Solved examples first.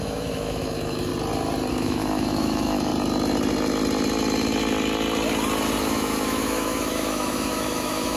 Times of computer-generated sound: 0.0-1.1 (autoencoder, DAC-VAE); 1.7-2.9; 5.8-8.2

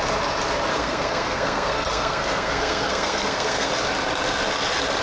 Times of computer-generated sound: 0.7-3.7 (codec, SNAC)

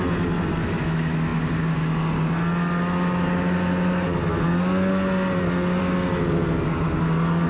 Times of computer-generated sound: none

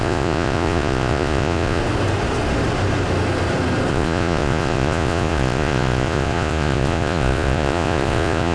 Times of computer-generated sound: 0.0-1.8 (vocoder, Vocos); 3.9-8.5

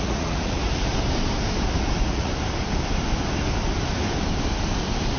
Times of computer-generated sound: 0.0-0.9 (vocoder, Vocos); 1.9-2.3